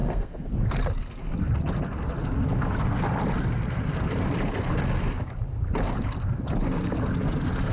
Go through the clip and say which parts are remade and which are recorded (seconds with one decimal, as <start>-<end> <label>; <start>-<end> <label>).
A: 0.0-0.5 remade; 0.5-7.7 recorded

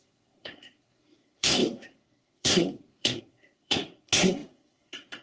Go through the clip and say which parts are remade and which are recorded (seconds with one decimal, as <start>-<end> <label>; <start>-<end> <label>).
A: 0.0-5.2 remade

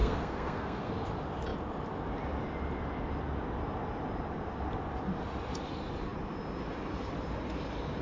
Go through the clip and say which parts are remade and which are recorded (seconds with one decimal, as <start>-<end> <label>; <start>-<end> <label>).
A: 0.0-0.9 remade; 0.9-8.0 recorded

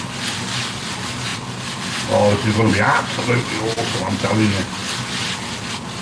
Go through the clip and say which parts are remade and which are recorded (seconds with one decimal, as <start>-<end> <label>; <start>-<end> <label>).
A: 0.0-6.0 recorded

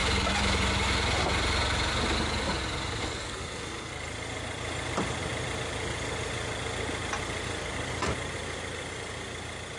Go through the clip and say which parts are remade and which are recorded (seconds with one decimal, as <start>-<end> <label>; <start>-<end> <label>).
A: 0.0-3.0 recorded; 3.0-3.9 remade; 3.9-9.8 recorded